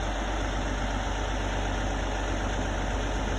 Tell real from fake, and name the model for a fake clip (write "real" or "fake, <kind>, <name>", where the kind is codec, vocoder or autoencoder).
real